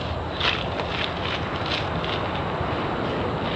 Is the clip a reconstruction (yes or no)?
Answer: no